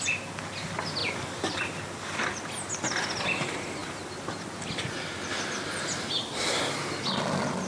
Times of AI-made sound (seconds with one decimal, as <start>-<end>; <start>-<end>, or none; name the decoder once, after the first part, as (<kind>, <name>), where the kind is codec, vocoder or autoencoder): 1.0-2.9 (vocoder, BigVGAN v2)

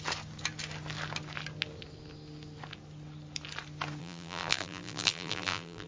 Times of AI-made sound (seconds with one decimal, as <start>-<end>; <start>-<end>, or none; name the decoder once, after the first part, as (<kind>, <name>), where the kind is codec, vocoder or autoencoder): 4.0-5.9 (vocoder, BigVGAN v2)